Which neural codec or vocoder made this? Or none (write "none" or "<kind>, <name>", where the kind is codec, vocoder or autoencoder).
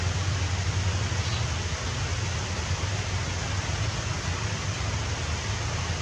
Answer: none